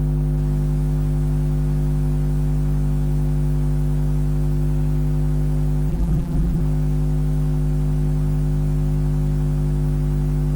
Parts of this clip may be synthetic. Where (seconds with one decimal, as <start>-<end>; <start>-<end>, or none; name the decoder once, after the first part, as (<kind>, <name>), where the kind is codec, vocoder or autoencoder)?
5.9-6.6 (vocoder, BigVGAN v2)